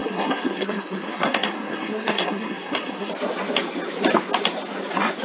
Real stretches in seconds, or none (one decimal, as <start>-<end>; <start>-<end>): 3.1-5.2